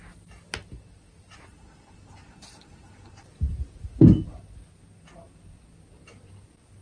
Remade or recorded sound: recorded